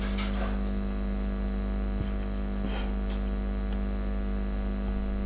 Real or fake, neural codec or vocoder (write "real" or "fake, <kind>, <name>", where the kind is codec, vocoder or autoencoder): real